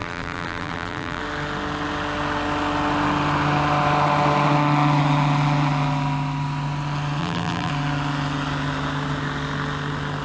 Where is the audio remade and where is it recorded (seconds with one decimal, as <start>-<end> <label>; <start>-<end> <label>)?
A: 0.0-1.2 remade; 1.2-7.2 recorded; 7.2-7.7 remade; 7.7-10.2 recorded